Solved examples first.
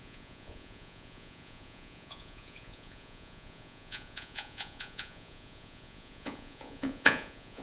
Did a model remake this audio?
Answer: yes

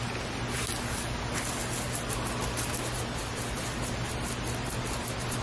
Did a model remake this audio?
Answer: no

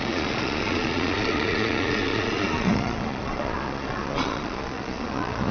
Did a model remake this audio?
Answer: yes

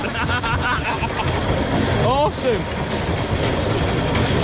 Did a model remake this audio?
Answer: no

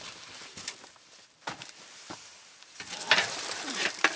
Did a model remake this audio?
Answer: no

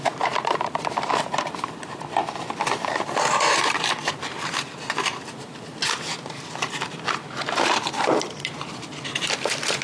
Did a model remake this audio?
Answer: yes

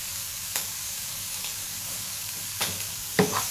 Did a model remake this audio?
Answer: yes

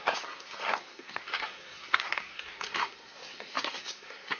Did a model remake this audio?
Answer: yes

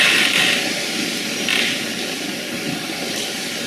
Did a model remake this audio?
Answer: yes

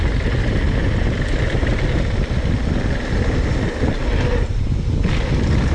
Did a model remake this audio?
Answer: no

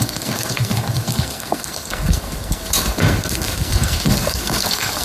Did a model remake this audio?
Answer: yes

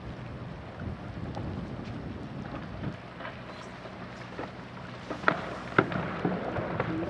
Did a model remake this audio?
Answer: no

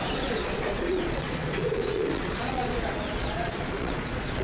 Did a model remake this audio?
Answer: yes